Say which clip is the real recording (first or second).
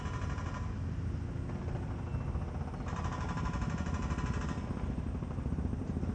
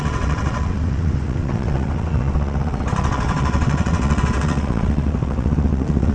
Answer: first